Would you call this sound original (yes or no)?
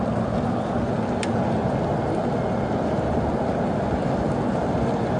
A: yes